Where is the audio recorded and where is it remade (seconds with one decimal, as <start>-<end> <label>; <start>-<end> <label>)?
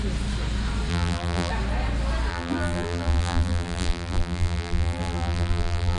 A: 0.0-0.9 recorded; 0.9-1.5 remade; 1.5-2.3 recorded; 2.3-6.0 remade